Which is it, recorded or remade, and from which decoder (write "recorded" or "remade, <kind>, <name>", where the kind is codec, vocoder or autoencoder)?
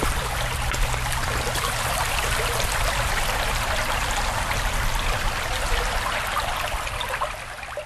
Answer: recorded